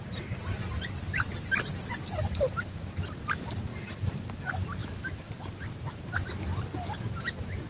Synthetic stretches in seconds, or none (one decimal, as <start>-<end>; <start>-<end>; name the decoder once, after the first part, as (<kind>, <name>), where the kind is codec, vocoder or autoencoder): 4.8-5.3 (autoencoder, DAC-VAE)